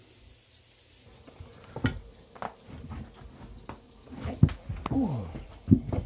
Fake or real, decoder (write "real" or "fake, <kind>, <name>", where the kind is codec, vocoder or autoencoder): real